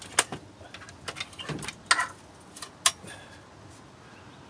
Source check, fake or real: real